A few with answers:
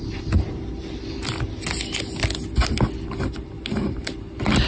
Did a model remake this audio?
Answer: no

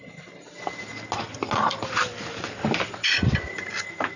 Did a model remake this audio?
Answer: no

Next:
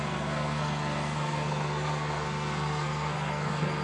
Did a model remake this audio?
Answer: yes